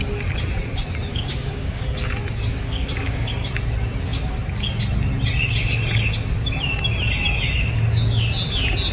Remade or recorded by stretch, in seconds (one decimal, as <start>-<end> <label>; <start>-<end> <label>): 0.0-1.1 recorded; 1.1-1.8 remade; 1.8-2.5 recorded; 2.5-3.3 remade; 3.3-8.9 recorded